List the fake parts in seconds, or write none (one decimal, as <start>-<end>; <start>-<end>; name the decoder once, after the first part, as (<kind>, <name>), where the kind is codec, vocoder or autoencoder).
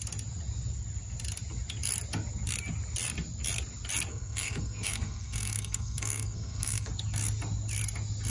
4.1-6.9 (codec, SNAC)